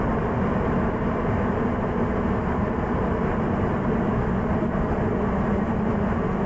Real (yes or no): yes